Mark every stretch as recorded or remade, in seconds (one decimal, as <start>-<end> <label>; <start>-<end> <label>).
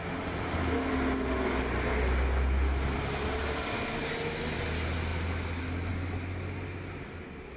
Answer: 0.0-7.6 recorded